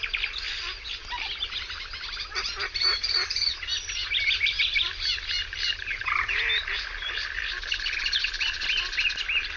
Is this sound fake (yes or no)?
yes